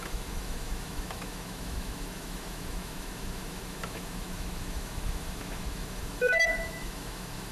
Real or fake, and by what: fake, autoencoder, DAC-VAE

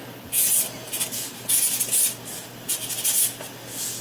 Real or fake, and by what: real